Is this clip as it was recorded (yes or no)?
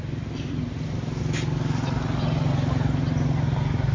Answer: yes